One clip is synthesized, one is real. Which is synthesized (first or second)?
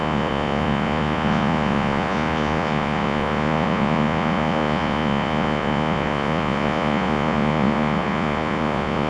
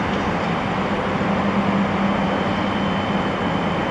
first